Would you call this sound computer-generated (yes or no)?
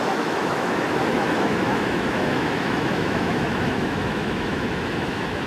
yes